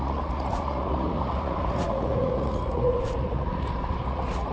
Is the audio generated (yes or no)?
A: yes